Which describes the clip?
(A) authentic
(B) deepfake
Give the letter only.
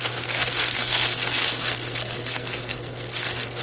B